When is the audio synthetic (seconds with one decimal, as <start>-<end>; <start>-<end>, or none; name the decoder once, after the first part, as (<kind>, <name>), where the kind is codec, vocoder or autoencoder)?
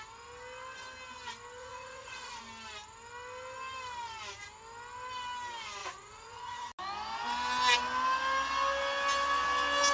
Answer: 1.6-2.4 (vocoder, Vocos); 5.8-6.7